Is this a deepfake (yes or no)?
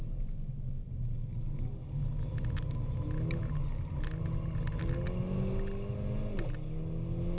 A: no